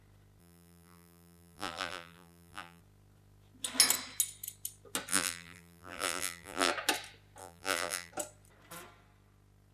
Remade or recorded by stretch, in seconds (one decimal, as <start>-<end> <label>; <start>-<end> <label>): 0.0-0.4 recorded; 0.4-2.8 remade; 2.8-5.1 recorded; 5.1-6.7 remade; 6.7-7.4 recorded; 7.4-8.1 remade; 8.1-9.7 recorded